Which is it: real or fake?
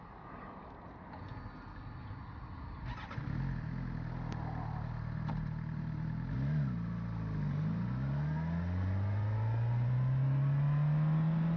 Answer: real